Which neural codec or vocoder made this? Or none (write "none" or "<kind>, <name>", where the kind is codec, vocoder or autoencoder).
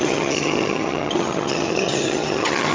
vocoder, HiFi-GAN